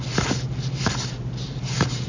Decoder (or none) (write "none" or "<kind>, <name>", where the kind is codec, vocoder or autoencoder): none